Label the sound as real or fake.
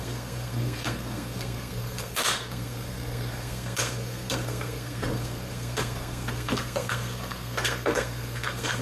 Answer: fake